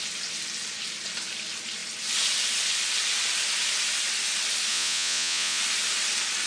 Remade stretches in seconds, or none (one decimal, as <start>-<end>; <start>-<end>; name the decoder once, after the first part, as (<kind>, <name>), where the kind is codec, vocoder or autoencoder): 4.7-5.6 (vocoder, Vocos)